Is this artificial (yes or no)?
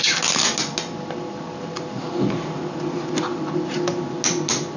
no